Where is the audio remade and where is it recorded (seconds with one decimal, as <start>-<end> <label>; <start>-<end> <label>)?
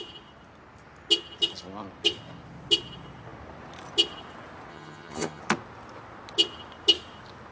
0.0-4.7 recorded; 4.7-5.4 remade; 5.4-7.5 recorded